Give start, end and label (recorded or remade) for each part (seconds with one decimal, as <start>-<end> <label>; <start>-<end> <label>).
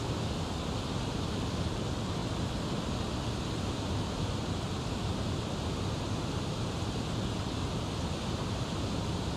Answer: 0.0-9.4 recorded